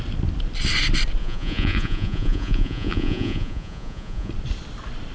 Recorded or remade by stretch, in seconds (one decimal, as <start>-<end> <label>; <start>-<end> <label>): 0.0-1.2 recorded; 1.2-4.3 remade; 4.3-5.1 recorded